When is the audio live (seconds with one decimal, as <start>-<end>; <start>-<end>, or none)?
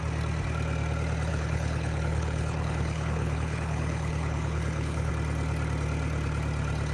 0.0-1.3; 5.1-6.9